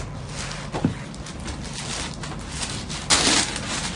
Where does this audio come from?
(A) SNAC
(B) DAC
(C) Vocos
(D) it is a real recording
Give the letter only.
D